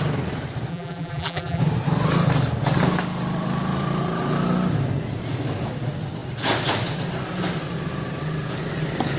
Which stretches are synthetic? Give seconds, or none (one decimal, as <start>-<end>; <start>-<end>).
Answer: 0.7-1.6